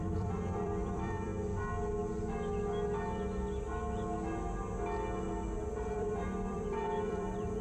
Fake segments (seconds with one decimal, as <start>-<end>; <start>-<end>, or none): 0.0-1.3; 5.8-7.6